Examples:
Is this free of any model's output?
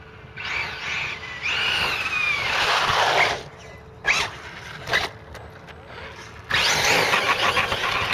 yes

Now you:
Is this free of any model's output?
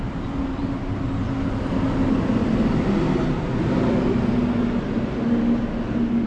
yes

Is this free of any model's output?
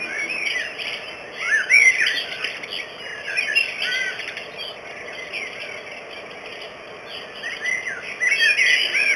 yes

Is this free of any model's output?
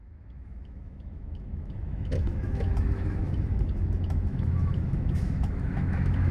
no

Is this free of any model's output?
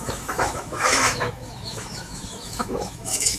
no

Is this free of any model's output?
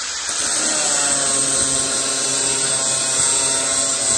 yes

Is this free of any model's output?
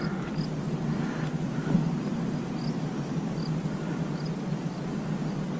yes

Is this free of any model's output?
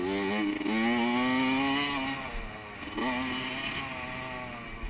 yes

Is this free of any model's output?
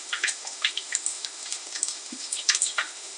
no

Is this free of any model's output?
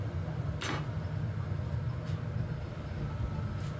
yes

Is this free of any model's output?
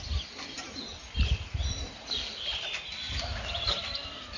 yes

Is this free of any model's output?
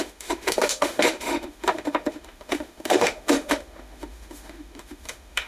no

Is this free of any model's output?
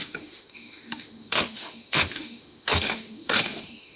no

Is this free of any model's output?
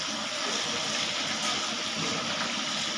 yes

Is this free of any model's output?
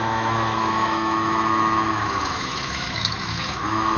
no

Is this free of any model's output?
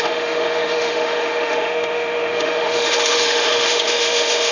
no